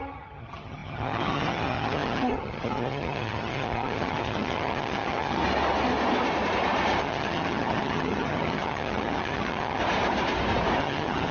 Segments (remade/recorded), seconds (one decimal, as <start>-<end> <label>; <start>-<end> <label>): 0.0-5.4 remade; 5.4-7.0 recorded; 7.0-9.8 remade; 9.8-10.8 recorded; 10.8-11.3 remade